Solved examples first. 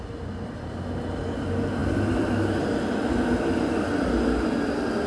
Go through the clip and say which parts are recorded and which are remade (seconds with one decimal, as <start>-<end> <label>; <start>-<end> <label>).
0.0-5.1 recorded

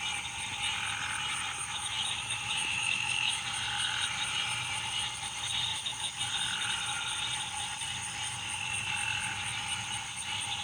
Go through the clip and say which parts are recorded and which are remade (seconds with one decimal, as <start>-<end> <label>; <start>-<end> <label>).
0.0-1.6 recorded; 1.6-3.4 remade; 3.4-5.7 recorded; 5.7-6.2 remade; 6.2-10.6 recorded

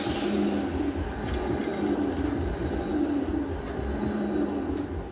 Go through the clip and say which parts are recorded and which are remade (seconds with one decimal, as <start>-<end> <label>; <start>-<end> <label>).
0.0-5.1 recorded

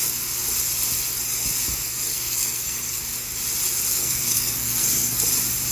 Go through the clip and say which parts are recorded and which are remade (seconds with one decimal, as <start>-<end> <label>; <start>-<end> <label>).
0.0-2.1 recorded; 2.1-3.0 remade; 3.0-3.9 recorded; 3.9-5.2 remade; 5.2-5.7 recorded